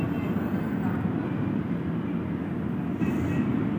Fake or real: real